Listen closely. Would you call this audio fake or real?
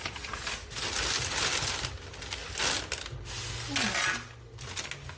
real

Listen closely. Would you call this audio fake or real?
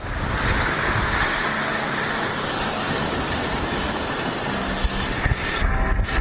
real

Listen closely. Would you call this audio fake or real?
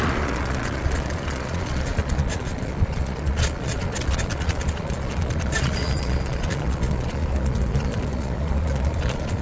fake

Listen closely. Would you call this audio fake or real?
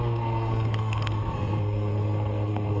fake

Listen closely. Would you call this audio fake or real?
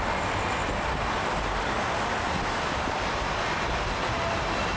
real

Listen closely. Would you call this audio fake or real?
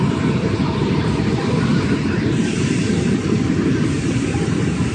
real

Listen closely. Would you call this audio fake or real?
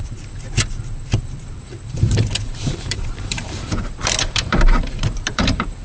fake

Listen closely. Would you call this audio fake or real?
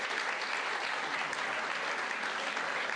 real